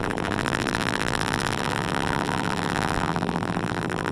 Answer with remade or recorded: remade